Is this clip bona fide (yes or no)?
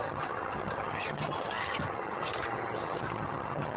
no